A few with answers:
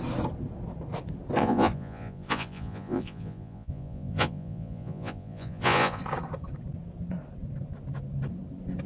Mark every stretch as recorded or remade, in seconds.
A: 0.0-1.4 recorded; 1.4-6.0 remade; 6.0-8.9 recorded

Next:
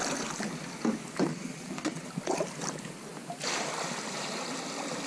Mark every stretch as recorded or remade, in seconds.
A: 0.0-1.3 recorded; 1.3-2.1 remade; 2.1-5.1 recorded

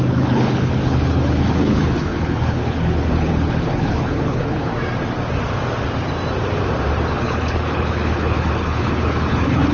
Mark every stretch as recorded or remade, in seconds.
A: 0.0-4.7 remade; 4.7-7.1 recorded; 7.1-9.7 remade

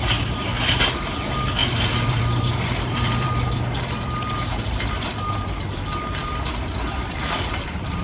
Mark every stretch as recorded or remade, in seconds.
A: 0.0-1.6 recorded; 1.6-5.3 remade; 5.3-6.2 recorded; 6.2-8.0 remade

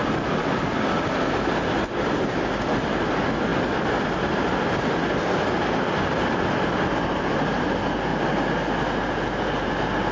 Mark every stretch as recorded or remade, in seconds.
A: 0.0-10.1 recorded

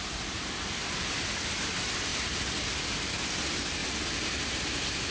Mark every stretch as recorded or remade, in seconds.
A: 0.0-2.1 recorded; 2.1-2.7 remade; 2.7-5.1 recorded

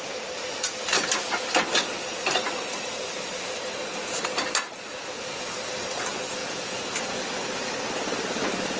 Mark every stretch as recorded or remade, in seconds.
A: 0.0-6.4 recorded; 6.4-6.9 remade; 6.9-8.8 recorded

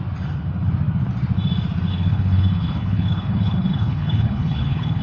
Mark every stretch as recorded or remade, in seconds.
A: 0.0-1.9 recorded; 1.9-5.0 remade